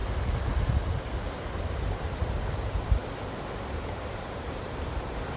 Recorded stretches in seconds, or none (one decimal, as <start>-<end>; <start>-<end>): 0.0-1.6; 3.0-3.7